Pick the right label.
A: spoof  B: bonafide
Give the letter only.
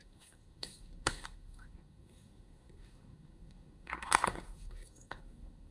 A